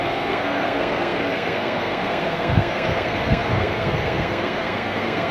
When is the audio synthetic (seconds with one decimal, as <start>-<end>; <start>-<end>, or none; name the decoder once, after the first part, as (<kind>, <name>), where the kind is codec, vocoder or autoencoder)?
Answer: 0.0-5.3 (codec, SNAC)